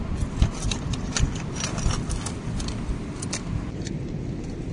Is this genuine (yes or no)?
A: no